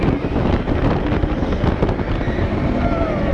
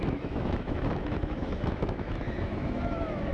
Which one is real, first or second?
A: first